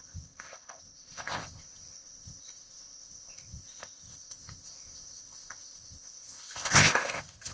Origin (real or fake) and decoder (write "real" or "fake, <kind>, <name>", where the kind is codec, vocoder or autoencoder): fake, codec, ZipCodec